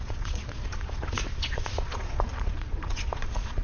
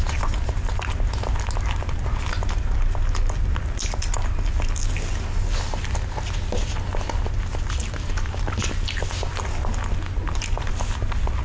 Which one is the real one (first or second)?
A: second